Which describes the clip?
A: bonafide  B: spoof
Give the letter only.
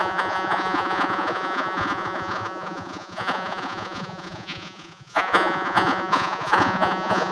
B